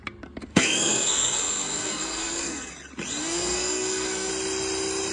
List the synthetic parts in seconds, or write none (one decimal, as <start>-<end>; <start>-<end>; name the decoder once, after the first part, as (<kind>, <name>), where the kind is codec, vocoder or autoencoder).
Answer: 0.5-2.7 (codec, SNAC); 3.2-4.3